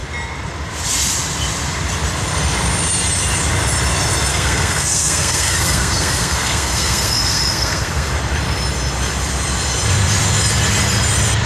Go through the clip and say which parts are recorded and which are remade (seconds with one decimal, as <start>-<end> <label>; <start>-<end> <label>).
0.0-4.3 recorded; 4.3-8.1 remade; 8.1-11.5 recorded